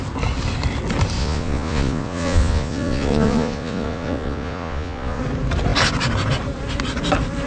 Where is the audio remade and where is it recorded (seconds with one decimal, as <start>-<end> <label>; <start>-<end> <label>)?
0.0-1.2 recorded; 1.2-5.2 remade; 5.2-7.5 recorded